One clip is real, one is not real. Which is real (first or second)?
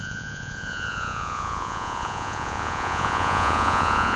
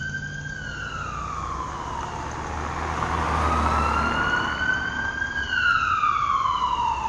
second